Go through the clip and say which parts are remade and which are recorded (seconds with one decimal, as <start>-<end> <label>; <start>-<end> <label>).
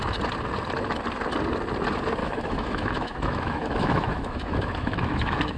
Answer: 0.0-2.2 recorded; 2.2-5.6 remade